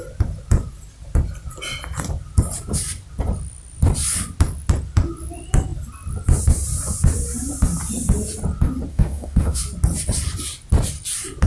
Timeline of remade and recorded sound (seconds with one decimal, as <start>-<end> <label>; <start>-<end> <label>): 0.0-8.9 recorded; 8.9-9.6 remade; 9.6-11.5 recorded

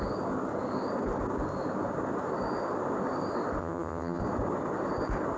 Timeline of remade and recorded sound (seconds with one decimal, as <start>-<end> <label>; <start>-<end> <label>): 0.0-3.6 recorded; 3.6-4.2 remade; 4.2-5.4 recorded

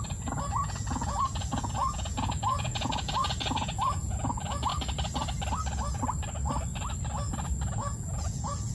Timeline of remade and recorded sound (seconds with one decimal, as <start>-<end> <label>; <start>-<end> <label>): 0.0-4.7 remade; 4.7-7.7 recorded; 7.7-8.7 remade